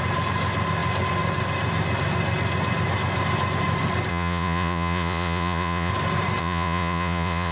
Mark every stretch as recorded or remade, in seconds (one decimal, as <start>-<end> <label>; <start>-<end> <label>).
0.0-4.1 recorded; 4.1-5.9 remade; 5.9-6.4 recorded; 6.4-7.5 remade

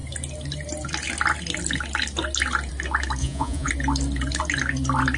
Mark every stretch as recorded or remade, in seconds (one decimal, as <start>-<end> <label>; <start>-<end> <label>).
0.0-3.2 recorded; 3.2-3.7 remade; 3.7-5.2 recorded